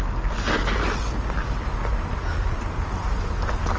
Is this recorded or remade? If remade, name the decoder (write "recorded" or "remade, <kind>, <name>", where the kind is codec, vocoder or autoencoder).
recorded